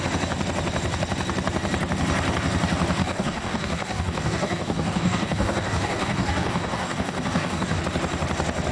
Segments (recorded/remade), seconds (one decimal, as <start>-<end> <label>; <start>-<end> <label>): 0.0-3.0 recorded; 3.0-7.8 remade; 7.8-8.7 recorded